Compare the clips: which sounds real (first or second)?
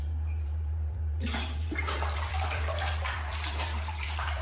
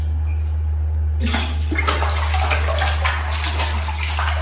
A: second